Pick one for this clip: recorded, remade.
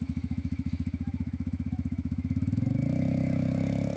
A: remade